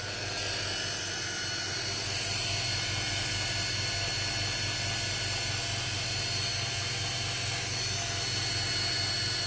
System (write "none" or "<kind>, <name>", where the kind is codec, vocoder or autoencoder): none